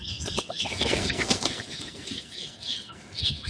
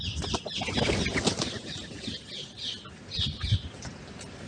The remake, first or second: first